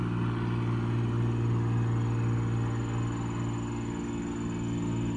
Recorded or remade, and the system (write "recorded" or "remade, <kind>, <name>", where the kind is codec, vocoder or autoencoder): recorded